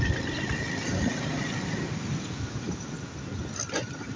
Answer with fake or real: real